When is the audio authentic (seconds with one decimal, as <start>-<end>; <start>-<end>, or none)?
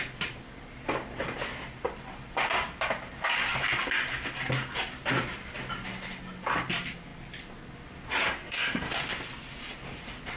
0.0-8.3; 8.9-10.4